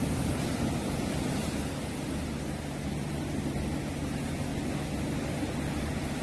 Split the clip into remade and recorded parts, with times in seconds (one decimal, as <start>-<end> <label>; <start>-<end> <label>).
0.0-6.2 recorded